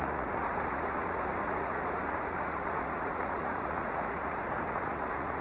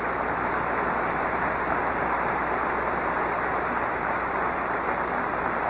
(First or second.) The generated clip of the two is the first